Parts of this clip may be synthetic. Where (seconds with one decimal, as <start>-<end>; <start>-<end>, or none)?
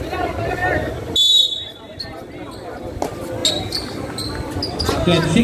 none